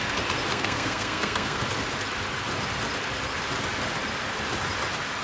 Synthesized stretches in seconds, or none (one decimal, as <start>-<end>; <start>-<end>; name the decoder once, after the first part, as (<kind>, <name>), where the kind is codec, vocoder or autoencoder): 0.5-1.6 (codec, SNAC)